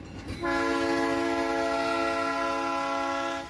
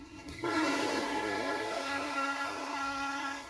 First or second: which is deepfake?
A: second